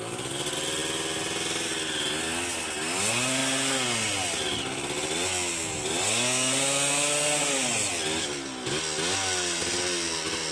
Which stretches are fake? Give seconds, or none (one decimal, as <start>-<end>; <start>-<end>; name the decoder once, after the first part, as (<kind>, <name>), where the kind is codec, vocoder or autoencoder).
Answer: none

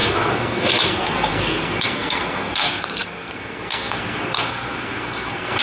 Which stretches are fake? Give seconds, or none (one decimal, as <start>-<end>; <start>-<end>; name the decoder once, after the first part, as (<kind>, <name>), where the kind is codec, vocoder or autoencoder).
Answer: 0.0-5.6 (codec, SNAC)

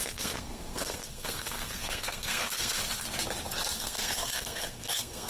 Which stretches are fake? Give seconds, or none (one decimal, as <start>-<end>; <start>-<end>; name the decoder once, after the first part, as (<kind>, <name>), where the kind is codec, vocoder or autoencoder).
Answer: 0.0-2.8 (codec, SNAC); 3.8-5.3

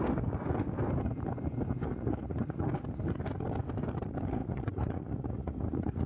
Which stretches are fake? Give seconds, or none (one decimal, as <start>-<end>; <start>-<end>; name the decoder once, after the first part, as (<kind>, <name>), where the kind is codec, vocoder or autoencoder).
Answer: 1.9-2.6 (vocoder, Vocos); 4.4-6.1

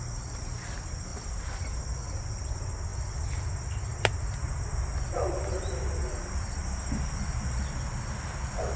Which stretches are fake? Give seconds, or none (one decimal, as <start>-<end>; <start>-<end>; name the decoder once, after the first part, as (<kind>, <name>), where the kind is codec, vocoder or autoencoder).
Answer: none

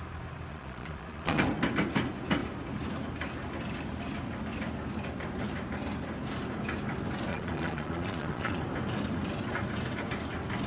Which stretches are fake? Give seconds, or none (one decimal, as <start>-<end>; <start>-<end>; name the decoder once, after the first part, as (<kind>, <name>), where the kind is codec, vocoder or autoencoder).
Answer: 0.5-1.4 (vocoder, Vocos); 7.3-8.6